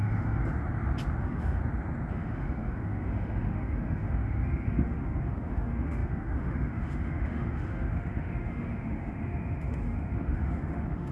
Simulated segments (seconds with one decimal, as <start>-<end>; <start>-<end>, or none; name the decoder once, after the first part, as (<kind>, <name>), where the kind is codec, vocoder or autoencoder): 0.0-0.4 (autoencoder, DAC-VAE); 1.2-1.6; 2.1-11.1